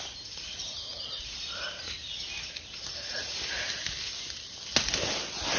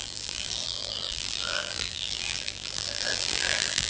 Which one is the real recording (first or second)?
first